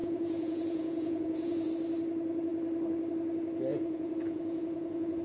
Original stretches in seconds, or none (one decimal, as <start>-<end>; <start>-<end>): 1.7-3.7